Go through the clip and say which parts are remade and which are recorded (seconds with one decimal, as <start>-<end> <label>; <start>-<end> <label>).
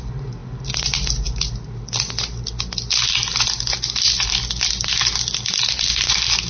0.0-6.5 recorded